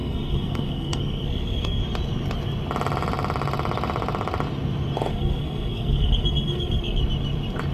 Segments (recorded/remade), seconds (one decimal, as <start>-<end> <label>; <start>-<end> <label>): 0.0-1.8 remade; 1.8-5.1 recorded; 5.1-7.0 remade; 7.0-7.7 recorded